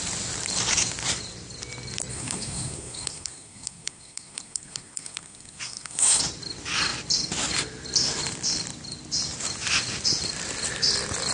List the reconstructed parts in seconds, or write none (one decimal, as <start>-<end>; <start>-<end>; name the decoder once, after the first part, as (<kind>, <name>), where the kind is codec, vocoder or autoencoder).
2.1-6.2 (codec, SNAC)

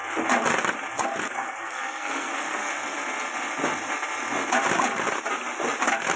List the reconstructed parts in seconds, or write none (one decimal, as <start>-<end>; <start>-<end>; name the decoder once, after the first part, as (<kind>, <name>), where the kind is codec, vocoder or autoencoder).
1.3-2.7 (codec, SNAC)

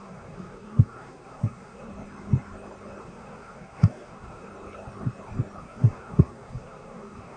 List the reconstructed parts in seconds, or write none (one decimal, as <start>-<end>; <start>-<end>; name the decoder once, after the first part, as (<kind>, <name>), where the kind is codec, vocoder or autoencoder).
0.0-1.9 (codec, SNAC); 3.0-4.5; 5.6-7.4

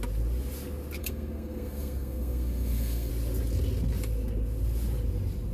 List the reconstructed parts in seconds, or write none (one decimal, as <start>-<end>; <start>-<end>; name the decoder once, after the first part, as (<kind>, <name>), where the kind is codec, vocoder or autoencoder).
1.0-3.1 (codec, SNAC)

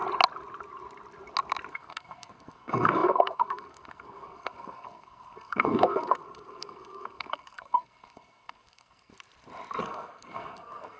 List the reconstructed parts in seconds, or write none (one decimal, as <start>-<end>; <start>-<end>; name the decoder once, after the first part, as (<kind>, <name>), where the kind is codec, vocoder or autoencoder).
1.7-9.1 (codec, SNAC); 9.8-11.0

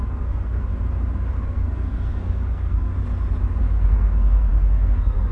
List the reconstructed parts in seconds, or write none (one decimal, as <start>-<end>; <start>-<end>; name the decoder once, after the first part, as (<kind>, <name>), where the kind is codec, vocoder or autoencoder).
0.0-0.7 (codec, SNAC); 1.3-2.9; 3.6-5.3

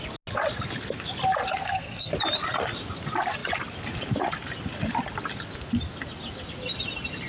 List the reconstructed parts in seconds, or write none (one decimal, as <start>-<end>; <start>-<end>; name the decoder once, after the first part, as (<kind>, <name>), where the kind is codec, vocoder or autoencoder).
1.6-2.1 (codec, SNAC)